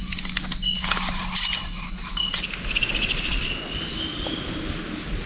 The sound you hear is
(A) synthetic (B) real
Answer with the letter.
B